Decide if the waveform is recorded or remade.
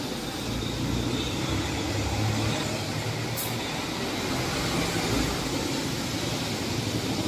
recorded